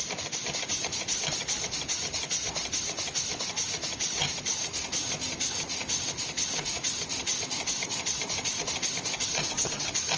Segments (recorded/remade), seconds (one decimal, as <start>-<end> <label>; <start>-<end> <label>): 0.0-10.2 recorded